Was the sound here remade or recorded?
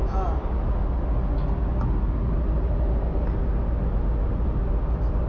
recorded